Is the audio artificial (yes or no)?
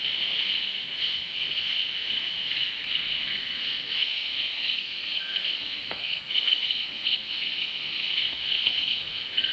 yes